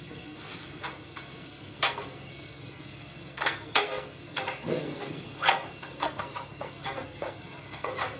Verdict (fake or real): fake